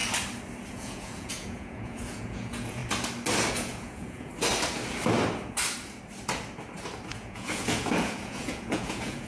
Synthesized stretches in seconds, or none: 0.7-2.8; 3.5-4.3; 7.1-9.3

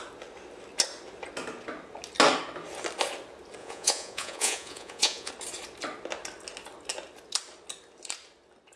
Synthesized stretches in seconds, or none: 3.6-5.3

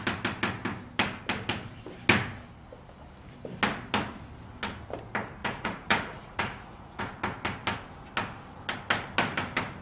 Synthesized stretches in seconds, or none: 5.4-7.0

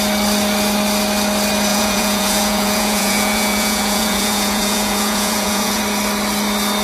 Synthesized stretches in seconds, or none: 1.7-5.8